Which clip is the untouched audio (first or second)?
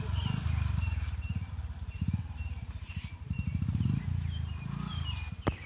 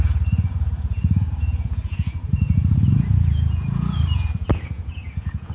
first